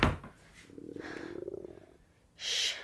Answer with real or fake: real